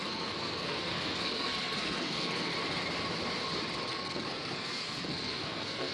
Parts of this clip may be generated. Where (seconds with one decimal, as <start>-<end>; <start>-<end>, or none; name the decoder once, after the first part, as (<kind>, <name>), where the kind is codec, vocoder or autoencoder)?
0.0-2.5 (codec, SNAC); 3.9-5.9